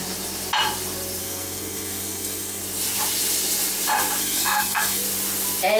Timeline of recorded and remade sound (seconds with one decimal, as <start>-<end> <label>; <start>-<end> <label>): 0.0-1.2 recorded; 1.2-2.6 remade; 2.6-4.2 recorded; 4.2-5.0 remade; 5.0-5.8 recorded